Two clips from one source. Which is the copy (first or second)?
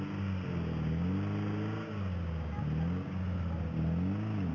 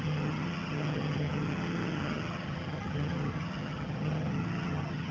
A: second